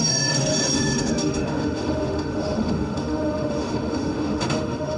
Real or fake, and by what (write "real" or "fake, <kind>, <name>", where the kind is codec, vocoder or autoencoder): fake, autoencoder, DAC-VAE